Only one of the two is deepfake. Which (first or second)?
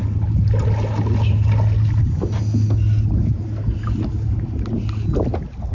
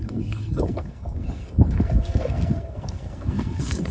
second